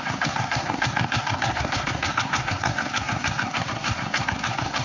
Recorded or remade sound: remade